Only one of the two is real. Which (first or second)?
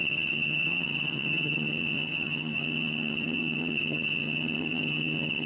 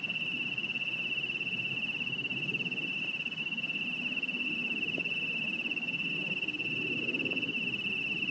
second